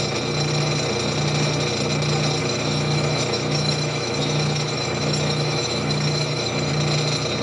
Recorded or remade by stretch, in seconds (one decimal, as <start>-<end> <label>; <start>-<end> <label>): 0.0-2.4 recorded; 2.4-6.7 remade; 6.7-7.4 recorded